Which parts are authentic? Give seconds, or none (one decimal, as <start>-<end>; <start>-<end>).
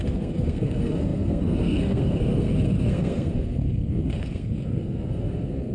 none